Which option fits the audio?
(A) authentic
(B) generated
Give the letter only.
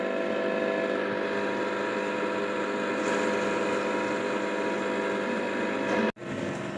A